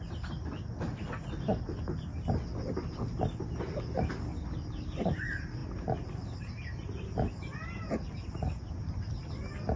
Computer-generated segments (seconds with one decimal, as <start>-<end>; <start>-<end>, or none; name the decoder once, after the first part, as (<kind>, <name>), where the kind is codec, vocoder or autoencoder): none